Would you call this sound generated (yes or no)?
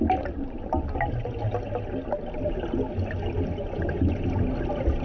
no